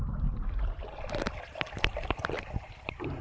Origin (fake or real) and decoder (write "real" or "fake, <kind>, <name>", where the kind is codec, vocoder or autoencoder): fake, vocoder, BigVGAN v2